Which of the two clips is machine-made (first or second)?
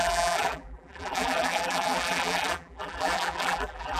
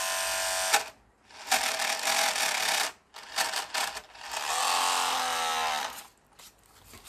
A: first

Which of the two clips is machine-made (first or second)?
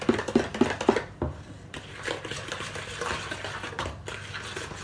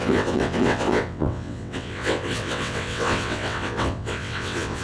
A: second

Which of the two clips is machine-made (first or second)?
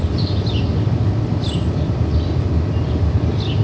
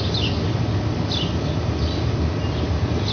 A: first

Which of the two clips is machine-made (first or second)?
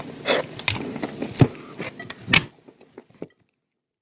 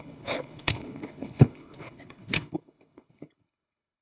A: second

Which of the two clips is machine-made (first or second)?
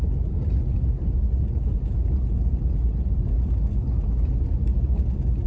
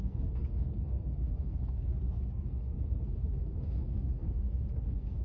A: second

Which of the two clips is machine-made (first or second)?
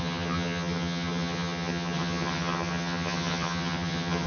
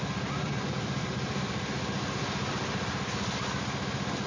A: first